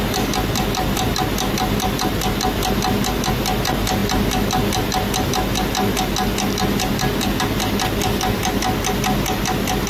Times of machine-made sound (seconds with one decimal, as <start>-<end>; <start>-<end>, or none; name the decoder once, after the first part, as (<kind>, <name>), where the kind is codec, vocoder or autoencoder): none